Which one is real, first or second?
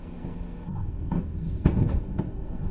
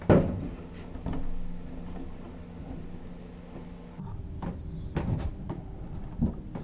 second